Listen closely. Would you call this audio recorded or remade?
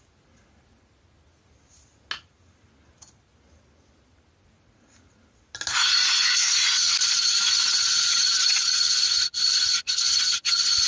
recorded